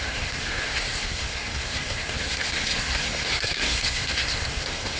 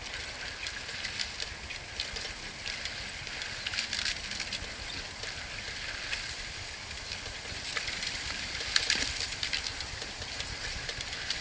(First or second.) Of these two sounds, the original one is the second